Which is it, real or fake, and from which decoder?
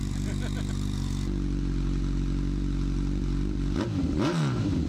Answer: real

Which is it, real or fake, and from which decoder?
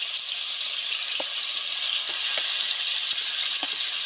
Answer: real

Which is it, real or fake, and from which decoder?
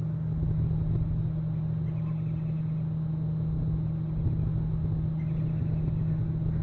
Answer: real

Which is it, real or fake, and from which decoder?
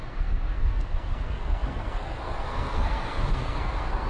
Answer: fake, codec, SNAC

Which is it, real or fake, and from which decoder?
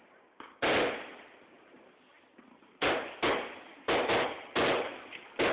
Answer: real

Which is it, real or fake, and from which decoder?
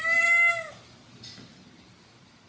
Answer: real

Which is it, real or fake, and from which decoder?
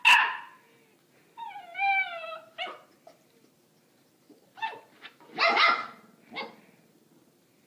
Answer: real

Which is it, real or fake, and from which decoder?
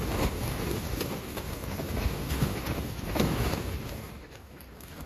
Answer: fake, codec, DAC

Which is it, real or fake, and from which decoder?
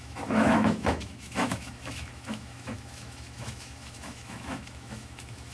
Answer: fake, autoencoder, DAC-VAE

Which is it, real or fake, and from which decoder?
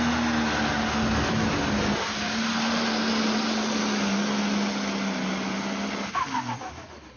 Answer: real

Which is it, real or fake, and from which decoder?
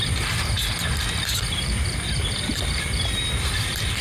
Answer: fake, vocoder, BigVGAN v2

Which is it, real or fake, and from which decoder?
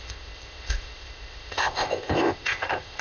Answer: fake, codec, ZipCodec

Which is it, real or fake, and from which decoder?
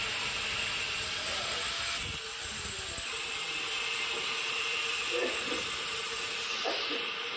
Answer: real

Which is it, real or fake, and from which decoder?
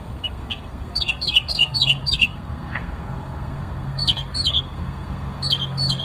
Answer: fake, codec, SNAC